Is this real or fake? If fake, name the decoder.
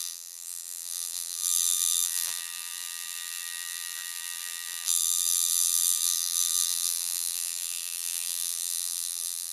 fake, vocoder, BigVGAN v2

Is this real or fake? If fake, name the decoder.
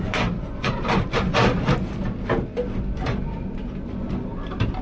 real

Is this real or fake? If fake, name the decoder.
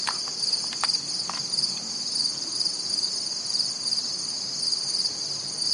real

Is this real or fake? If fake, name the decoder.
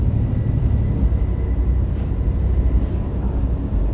fake, vocoder, BigVGAN v2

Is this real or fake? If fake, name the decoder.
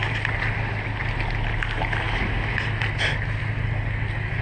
real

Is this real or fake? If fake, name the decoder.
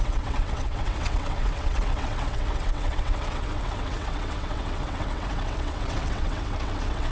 fake, vocoder, WaveNeXt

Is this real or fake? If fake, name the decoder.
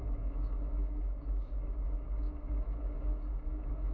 fake, autoencoder, DAC-VAE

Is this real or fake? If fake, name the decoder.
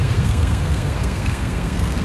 fake, codec, SNAC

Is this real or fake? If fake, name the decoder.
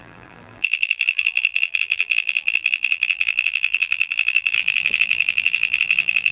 fake, vocoder, BigVGAN v2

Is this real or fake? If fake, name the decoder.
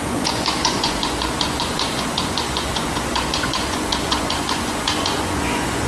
fake, vocoder, Vocos